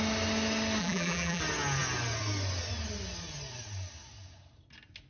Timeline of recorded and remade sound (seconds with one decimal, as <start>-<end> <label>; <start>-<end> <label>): 0.0-0.8 recorded; 0.8-1.4 remade; 1.4-5.1 recorded